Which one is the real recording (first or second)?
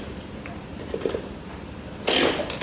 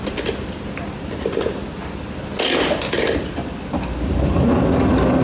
second